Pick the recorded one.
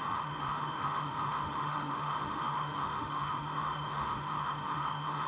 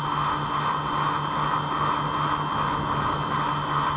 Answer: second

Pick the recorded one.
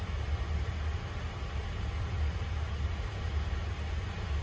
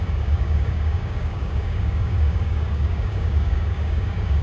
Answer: first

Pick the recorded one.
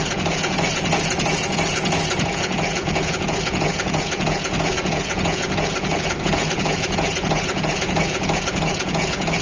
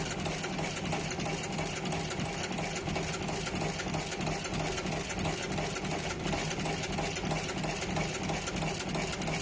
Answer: second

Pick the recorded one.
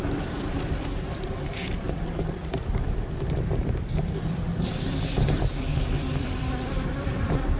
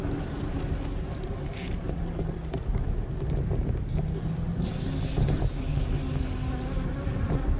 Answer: second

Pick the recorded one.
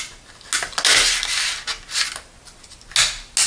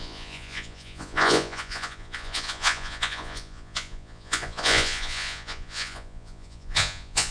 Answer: first